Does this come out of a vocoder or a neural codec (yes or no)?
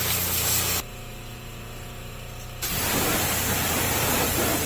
yes